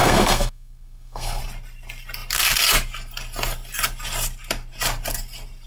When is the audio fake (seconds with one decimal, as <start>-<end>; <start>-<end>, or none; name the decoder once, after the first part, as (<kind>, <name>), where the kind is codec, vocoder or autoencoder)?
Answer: 0.0-1.4 (codec, SNAC)